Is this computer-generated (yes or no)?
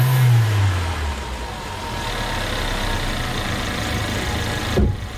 no